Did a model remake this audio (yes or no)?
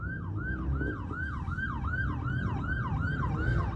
no